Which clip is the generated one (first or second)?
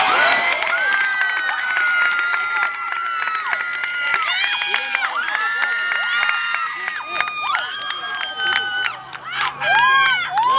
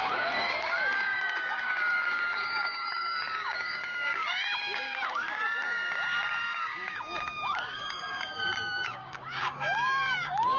second